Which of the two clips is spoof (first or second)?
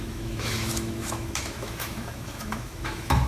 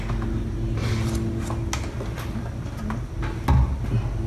first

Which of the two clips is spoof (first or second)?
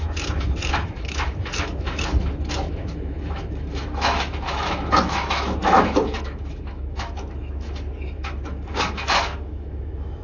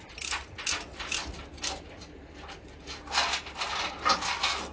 first